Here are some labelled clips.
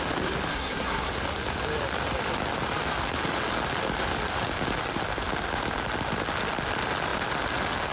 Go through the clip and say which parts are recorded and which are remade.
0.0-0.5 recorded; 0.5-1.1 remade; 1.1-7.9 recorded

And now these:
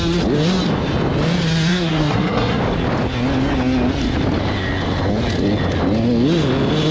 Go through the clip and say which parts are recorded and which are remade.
0.0-1.7 recorded; 1.7-2.6 remade; 2.6-6.9 recorded

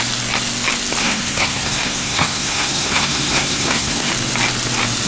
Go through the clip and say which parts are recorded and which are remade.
0.0-1.0 recorded; 1.0-4.1 remade; 4.1-5.1 recorded